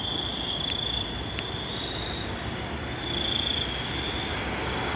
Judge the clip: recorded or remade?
recorded